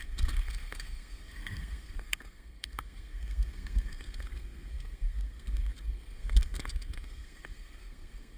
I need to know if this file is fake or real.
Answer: fake